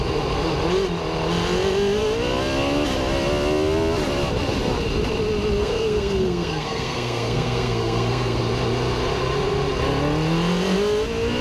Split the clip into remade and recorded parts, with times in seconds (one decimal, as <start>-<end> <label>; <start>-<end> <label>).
0.0-5.6 recorded; 5.6-8.4 remade; 8.4-11.4 recorded